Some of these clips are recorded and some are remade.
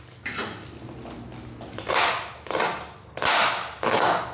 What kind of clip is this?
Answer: recorded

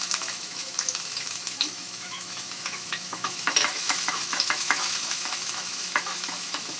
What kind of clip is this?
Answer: remade